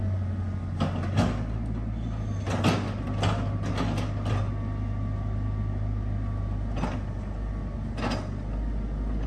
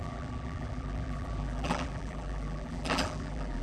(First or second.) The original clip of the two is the first